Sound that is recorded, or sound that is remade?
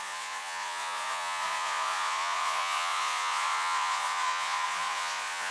remade